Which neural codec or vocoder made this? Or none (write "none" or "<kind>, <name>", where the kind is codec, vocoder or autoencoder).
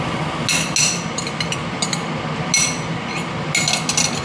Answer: none